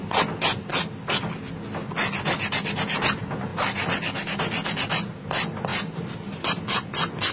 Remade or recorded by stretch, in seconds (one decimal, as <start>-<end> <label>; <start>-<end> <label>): 0.0-0.7 recorded; 0.7-1.2 remade; 1.2-3.5 recorded; 3.5-5.3 remade; 5.3-5.7 recorded; 5.7-6.7 remade; 6.7-7.3 recorded